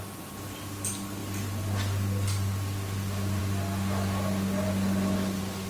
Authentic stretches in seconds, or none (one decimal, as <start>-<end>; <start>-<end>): 0.0-5.7